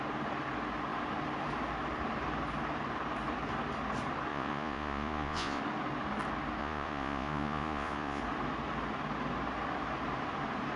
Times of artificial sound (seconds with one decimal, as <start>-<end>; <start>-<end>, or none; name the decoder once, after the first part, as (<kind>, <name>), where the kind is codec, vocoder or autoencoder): 4.3-5.6 (vocoder, Vocos); 6.6-8.2